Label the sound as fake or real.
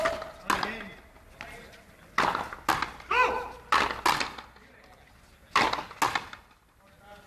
real